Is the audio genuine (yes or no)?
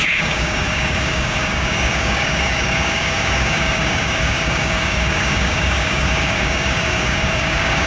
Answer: no